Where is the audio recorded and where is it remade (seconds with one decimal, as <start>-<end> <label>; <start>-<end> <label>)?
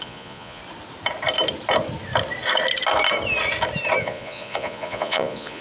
0.0-0.6 remade; 0.6-4.0 recorded; 4.0-5.6 remade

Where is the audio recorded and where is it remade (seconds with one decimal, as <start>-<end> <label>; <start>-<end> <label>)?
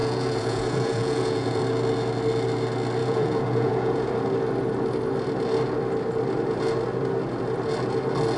0.0-1.6 remade; 1.6-3.0 recorded; 3.0-4.1 remade; 4.1-8.4 recorded